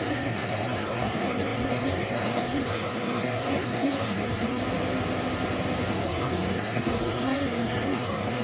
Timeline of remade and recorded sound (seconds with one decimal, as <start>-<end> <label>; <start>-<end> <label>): 0.0-4.6 remade; 4.6-5.9 recorded; 5.9-8.4 remade